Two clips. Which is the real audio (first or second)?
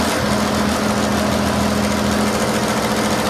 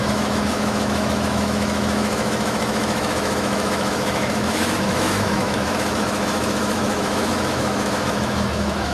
first